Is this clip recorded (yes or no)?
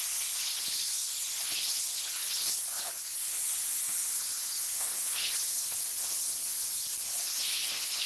no